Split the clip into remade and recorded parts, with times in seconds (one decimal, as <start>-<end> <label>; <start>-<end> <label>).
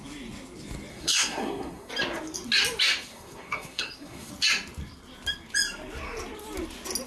0.0-0.9 recorded; 0.9-1.9 remade; 1.9-3.1 recorded; 3.1-4.3 remade; 4.3-7.1 recorded